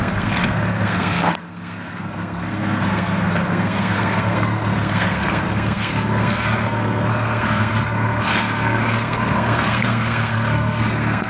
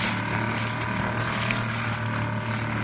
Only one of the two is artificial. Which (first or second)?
first